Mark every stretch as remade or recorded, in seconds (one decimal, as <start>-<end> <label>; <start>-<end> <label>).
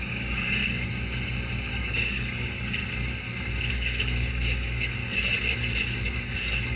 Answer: 0.0-0.6 remade; 0.6-1.7 recorded; 1.7-2.8 remade; 2.8-3.7 recorded; 3.7-5.0 remade; 5.0-6.8 recorded